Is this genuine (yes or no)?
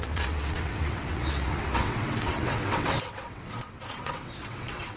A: no